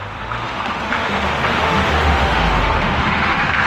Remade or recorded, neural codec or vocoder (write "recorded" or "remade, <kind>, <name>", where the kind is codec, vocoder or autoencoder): remade, autoencoder, DAC-VAE